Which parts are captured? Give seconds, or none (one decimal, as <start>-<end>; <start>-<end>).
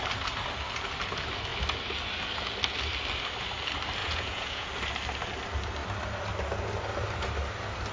0.0-4.0; 4.7-7.9